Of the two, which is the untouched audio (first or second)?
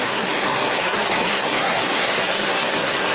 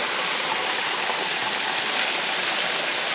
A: second